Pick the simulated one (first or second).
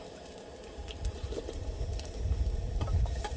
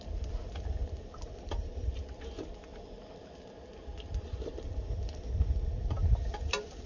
first